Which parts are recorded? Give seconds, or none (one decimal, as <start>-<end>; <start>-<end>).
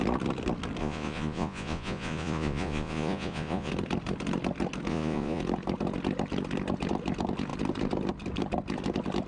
0.0-0.8; 3.7-4.9; 5.4-9.3